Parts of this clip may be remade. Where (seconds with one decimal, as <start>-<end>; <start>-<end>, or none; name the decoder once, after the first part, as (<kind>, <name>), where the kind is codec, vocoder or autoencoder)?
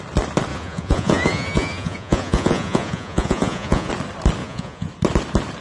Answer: 0.5-3.9 (vocoder, Vocos); 4.4-4.9